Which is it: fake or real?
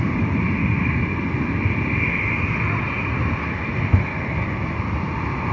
real